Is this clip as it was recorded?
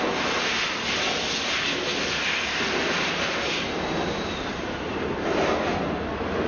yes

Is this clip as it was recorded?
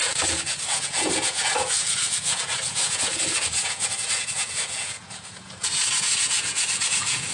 no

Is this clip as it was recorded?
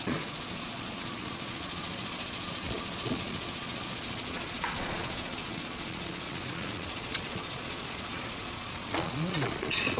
no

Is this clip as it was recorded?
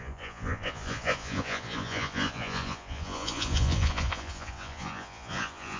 no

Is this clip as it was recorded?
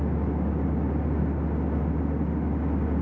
yes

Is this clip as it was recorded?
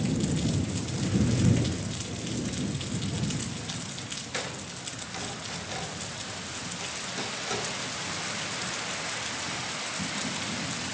yes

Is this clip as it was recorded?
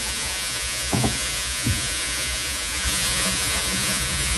no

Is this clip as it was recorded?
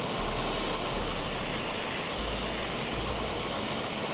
yes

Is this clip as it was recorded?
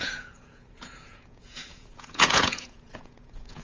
no